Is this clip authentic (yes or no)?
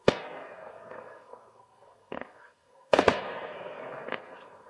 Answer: no